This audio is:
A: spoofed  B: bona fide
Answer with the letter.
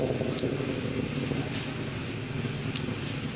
B